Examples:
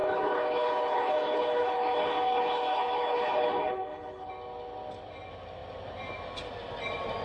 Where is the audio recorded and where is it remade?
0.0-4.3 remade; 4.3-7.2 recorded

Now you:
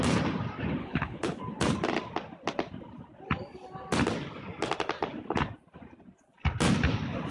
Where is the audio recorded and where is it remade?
0.0-0.8 recorded; 0.8-1.4 remade; 1.4-7.3 recorded

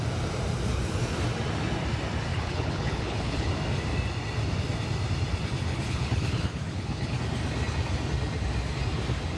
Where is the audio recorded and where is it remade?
0.0-2.3 recorded; 2.3-3.5 remade; 3.5-5.7 recorded; 5.7-7.2 remade; 7.2-9.4 recorded

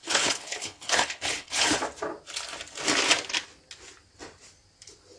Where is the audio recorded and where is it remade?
0.0-1.8 remade; 1.8-5.2 recorded